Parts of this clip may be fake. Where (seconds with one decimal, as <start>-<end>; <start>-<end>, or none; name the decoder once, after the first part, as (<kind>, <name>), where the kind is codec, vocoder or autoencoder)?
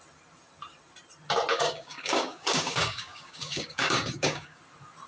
1.5-4.6 (codec, DAC)